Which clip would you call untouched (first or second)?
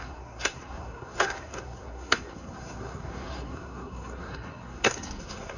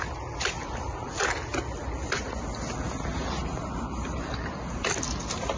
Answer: second